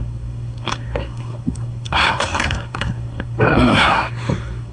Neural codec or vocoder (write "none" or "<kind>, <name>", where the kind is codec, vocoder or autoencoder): codec, SNAC